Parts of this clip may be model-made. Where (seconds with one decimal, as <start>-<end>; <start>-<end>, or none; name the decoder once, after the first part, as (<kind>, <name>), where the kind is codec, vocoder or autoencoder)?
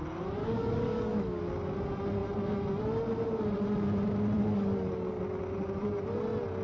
0.4-1.5 (codec, DAC); 4.4-5.2